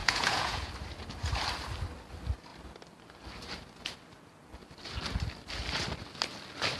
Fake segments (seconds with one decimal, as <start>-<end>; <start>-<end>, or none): 0.0-0.7